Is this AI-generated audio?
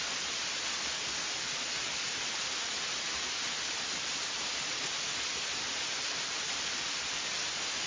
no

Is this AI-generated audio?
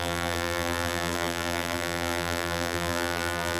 yes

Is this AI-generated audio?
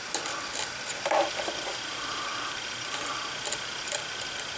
no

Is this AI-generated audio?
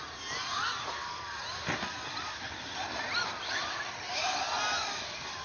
no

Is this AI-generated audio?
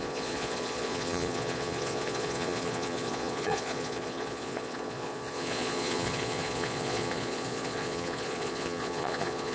yes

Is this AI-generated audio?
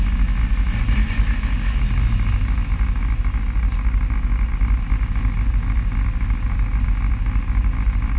no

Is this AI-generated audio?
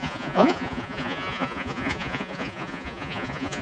yes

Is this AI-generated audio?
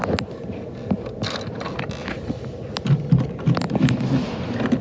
no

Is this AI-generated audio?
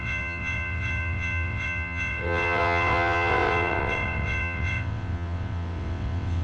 yes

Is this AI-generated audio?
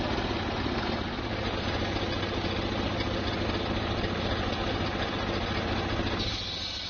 no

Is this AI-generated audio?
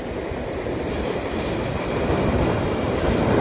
no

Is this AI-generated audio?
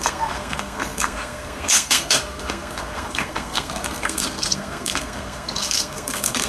yes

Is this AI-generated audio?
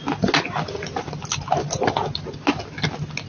no